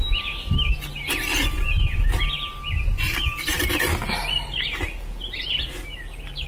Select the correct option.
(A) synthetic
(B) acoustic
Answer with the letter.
B